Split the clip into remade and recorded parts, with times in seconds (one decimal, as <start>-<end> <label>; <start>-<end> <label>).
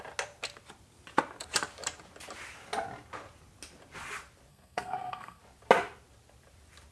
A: 0.0-4.5 recorded; 4.5-5.4 remade; 5.4-6.9 recorded